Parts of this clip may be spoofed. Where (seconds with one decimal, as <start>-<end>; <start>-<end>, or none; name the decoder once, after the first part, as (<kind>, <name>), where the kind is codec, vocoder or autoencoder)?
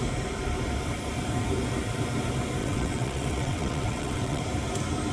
2.6-4.4 (vocoder, WaveNeXt)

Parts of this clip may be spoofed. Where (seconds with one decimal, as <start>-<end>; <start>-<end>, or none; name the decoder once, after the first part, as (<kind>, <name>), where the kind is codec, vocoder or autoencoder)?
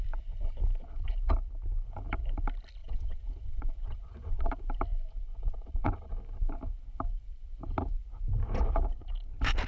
2.8-4.5 (vocoder, WaveNeXt); 5.1-6.1